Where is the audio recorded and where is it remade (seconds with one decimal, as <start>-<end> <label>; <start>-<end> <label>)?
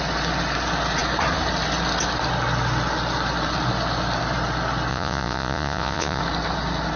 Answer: 0.0-4.9 recorded; 4.9-6.2 remade; 6.2-7.0 recorded